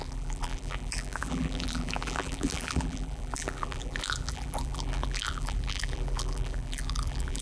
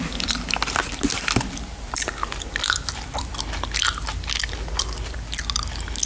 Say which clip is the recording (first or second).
second